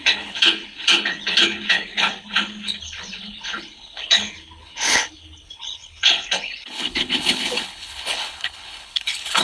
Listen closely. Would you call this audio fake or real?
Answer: fake